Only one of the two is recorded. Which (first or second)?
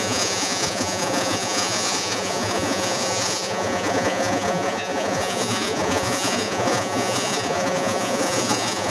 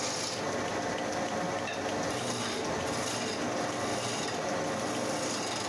second